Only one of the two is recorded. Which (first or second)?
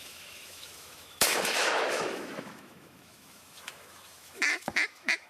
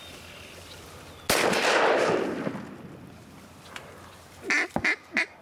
second